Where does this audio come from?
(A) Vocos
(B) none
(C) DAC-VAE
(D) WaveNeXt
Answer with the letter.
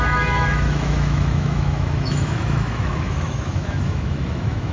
C